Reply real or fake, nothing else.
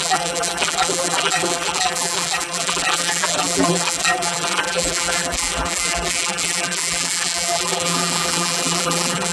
fake